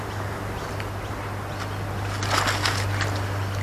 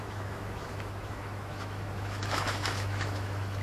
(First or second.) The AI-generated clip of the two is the second